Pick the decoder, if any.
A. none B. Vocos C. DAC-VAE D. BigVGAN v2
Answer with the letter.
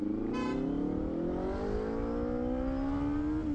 A